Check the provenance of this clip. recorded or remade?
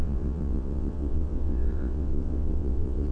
remade